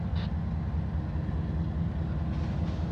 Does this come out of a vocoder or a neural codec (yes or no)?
no